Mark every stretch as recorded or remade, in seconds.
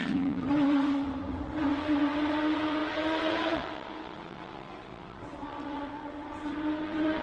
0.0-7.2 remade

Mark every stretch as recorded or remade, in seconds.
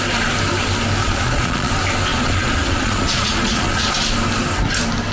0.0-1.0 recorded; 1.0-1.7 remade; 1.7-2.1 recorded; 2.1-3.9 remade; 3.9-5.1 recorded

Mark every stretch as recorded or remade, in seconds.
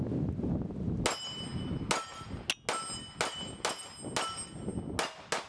0.0-5.5 recorded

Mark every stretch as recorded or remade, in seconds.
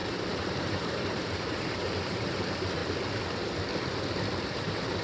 0.0-2.8 remade; 2.8-4.4 recorded; 4.4-5.0 remade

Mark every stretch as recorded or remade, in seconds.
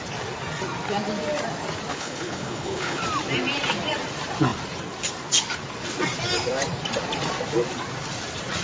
0.0-1.9 recorded; 1.9-3.0 remade; 3.0-8.6 recorded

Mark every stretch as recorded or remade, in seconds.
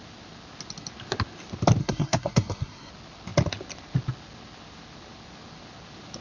0.0-1.8 recorded; 1.8-2.9 remade; 2.9-6.2 recorded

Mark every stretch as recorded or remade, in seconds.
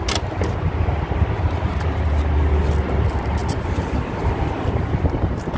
0.0-5.6 recorded